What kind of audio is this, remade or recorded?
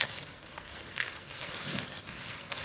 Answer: remade